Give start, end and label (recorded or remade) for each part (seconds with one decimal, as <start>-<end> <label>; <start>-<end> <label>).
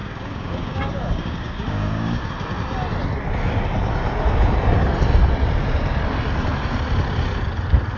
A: 0.0-2.3 remade; 2.3-8.0 recorded